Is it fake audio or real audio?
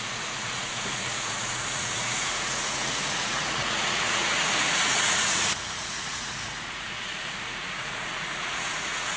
fake